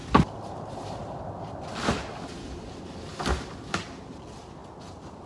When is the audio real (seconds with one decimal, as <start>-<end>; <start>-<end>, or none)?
0.0-5.3